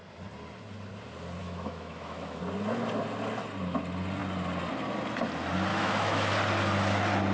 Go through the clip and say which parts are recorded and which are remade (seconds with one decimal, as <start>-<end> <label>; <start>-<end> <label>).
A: 0.0-1.4 recorded; 1.4-2.4 remade; 2.4-5.7 recorded; 5.7-6.3 remade; 6.3-7.3 recorded